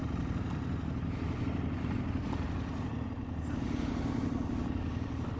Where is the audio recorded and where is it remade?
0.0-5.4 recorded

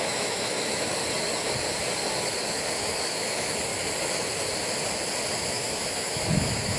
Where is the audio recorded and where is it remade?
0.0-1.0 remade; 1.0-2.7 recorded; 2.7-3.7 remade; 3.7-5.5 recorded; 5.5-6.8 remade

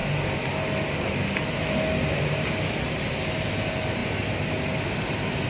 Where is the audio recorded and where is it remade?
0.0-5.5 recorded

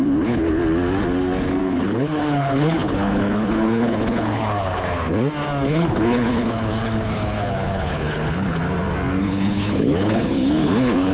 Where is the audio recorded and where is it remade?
0.0-0.6 remade; 0.6-1.6 recorded; 1.6-5.1 remade; 5.1-5.7 recorded; 5.7-8.6 remade; 8.6-9.2 recorded; 9.2-11.1 remade